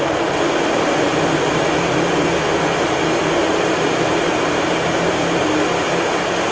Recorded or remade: recorded